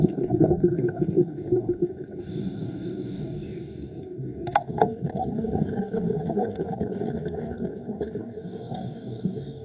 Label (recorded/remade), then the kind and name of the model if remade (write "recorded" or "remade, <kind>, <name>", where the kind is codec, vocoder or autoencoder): remade, codec, DAC